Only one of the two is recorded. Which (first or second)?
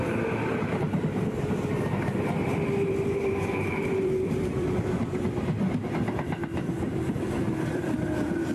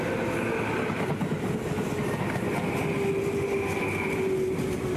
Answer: second